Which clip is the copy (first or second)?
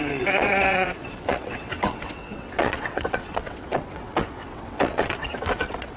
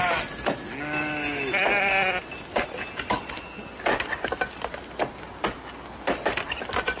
first